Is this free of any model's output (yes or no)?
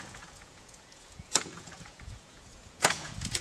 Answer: no